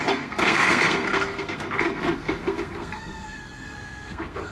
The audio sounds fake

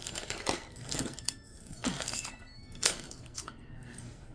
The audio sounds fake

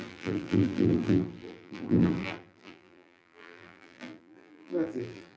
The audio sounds fake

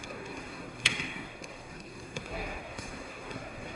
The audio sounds fake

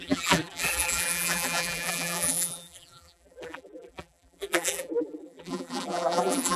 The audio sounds fake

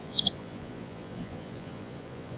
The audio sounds fake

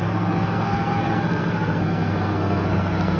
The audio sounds fake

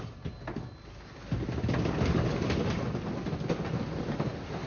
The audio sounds real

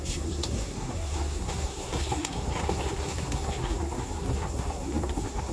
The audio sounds fake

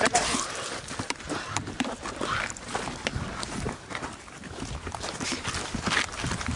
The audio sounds real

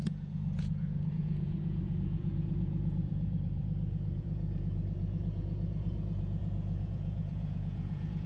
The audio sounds fake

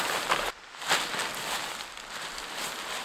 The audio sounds real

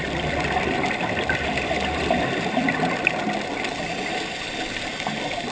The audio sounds real